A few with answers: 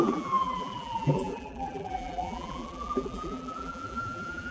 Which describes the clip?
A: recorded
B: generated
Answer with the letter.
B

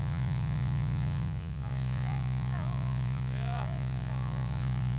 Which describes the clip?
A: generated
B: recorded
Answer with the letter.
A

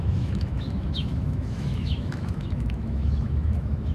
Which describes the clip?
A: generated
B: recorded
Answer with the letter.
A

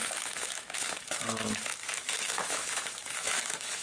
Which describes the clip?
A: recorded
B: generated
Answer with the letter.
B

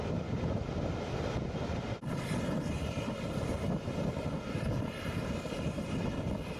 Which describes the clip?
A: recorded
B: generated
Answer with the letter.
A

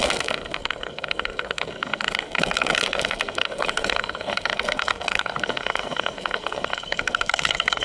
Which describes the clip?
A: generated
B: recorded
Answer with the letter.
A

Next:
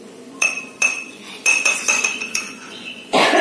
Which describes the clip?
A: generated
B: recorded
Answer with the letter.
A